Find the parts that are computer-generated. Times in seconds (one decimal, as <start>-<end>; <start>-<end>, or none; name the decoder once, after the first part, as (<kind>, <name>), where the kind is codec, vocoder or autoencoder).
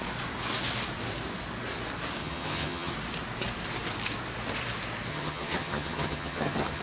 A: 2.2-2.9 (vocoder, HiFi-GAN); 5.1-6.8